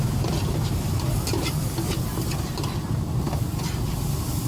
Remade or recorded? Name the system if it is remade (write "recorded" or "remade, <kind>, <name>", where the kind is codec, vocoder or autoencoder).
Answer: recorded